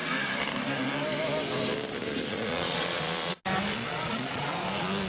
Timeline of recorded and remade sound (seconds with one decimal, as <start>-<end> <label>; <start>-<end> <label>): 0.0-2.3 recorded; 2.3-3.0 remade; 3.0-3.9 recorded; 3.9-4.4 remade; 4.4-5.1 recorded